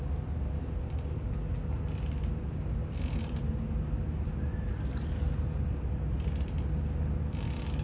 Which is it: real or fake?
real